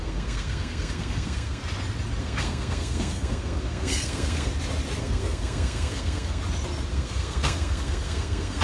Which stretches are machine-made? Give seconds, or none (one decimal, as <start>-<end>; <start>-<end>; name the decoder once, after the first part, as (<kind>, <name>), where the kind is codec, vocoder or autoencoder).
0.0-1.6 (codec, SNAC); 2.2-4.5; 5.0-6.4; 6.9-8.6